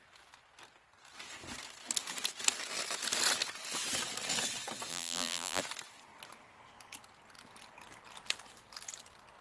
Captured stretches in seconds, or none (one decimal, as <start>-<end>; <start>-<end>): 0.0-4.9; 5.6-9.4